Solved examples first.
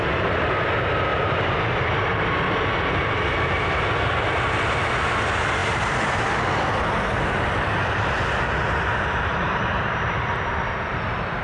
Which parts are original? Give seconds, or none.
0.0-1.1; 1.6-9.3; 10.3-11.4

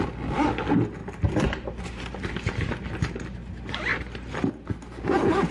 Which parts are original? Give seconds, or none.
0.0-1.0; 2.5-3.9; 4.5-5.5